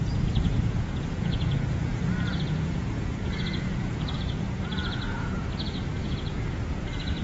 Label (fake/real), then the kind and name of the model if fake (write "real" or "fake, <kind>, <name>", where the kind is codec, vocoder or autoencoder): fake, vocoder, Vocos